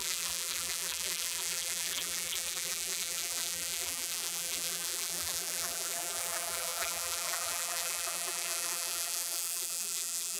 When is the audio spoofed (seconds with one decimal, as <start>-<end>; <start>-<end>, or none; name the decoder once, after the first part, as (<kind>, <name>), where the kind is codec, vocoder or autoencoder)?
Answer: 0.0-10.4 (vocoder, BigVGAN v2)